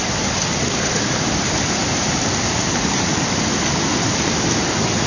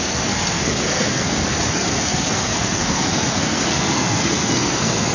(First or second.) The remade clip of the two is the second